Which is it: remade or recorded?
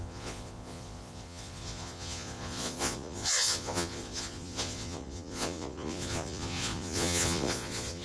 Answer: remade